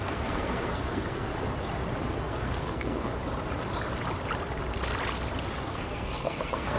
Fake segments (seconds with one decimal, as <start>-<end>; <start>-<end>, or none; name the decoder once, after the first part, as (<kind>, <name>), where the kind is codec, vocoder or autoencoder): 0.0-1.3 (codec, SNAC); 2.1-3.1; 5.6-6.8